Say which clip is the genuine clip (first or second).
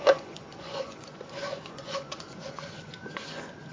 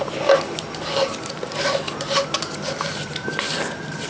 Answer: second